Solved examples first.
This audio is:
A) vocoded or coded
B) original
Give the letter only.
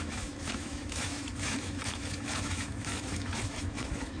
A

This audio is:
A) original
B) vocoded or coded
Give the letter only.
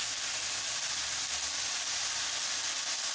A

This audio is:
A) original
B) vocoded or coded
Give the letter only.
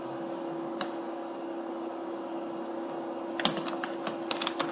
A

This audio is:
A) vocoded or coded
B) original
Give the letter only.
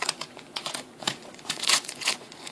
A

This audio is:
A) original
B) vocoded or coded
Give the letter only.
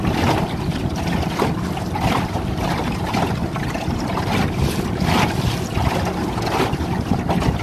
A